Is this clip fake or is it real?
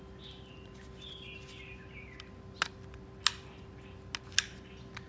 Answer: real